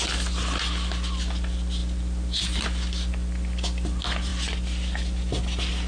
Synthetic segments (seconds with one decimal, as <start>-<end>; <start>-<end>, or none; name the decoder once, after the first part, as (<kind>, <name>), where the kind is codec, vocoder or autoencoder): none